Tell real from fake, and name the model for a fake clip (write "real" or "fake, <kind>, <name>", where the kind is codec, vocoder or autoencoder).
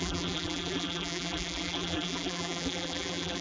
fake, vocoder, BigVGAN v2